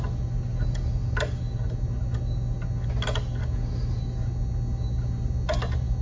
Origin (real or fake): real